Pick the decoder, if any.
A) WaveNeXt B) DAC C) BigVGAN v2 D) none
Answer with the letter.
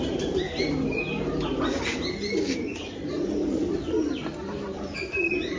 D